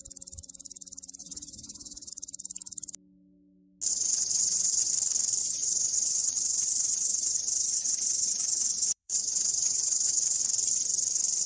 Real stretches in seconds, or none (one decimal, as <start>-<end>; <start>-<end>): 0.0-1.2; 2.1-3.9; 4.9-5.4; 10.4-11.5